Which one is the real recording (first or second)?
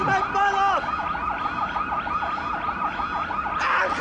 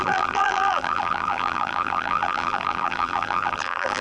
first